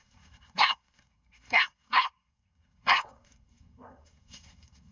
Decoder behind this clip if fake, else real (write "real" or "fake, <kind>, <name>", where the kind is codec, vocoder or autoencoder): fake, codec, SNAC